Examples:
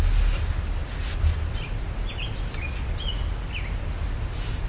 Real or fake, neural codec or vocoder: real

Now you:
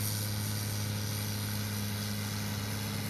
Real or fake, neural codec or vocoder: real